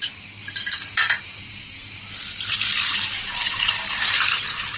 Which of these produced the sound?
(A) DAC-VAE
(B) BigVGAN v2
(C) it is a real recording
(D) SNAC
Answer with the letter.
B